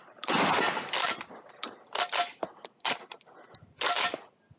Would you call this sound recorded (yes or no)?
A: no